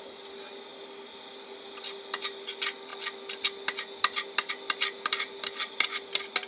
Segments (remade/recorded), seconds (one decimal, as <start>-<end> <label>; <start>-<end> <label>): 0.0-6.5 recorded

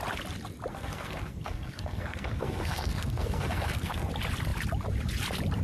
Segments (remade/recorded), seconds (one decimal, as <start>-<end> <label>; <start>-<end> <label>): 0.0-0.7 recorded; 0.7-4.1 remade; 4.1-5.6 recorded